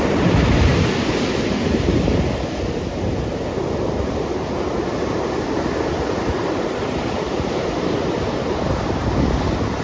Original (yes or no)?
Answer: yes